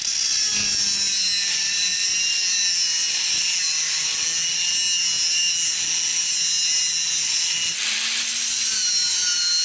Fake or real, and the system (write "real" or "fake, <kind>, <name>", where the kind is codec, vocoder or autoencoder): real